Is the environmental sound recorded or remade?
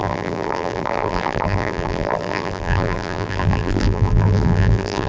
remade